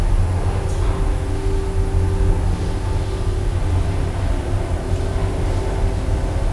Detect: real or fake real